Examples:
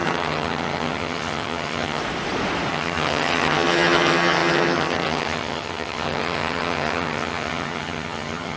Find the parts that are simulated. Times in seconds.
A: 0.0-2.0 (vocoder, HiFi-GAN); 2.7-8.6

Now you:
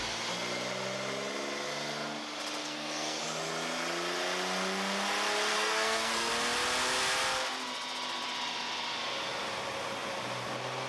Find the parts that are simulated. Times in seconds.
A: 2.6-3.2 (codec, SNAC); 5.5-6.3

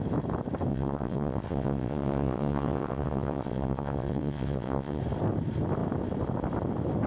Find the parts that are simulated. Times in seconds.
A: 0.7-5.0 (vocoder, WaveNeXt)